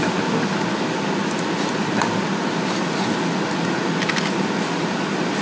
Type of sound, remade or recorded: recorded